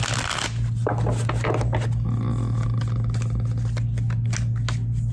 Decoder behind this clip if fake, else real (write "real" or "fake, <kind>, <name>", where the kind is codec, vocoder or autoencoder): real